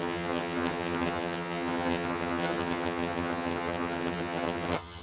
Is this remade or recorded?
remade